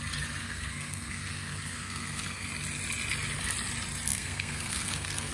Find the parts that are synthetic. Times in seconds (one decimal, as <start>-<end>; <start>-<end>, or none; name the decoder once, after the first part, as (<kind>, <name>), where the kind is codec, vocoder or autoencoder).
0.4-2.5 (codec, SNAC); 4.1-5.3